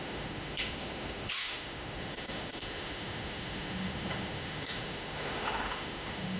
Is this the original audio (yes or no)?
no